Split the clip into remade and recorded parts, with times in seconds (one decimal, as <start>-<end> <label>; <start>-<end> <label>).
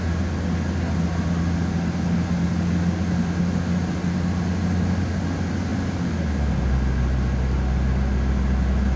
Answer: 0.0-9.0 recorded